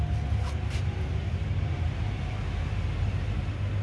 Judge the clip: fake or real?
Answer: real